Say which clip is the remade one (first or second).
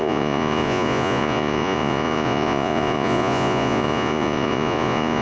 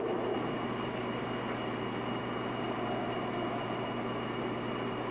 first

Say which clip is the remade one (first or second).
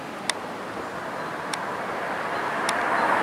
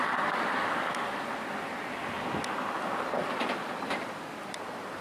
second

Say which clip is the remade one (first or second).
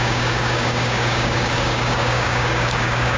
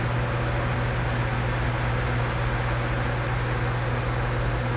first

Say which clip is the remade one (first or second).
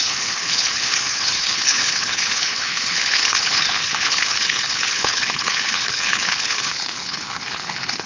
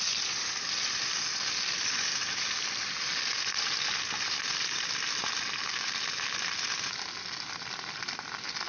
first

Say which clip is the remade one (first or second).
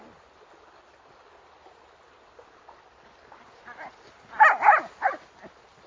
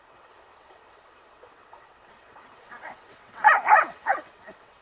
second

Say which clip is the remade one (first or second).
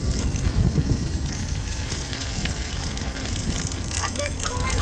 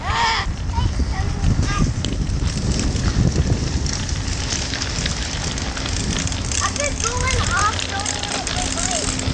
first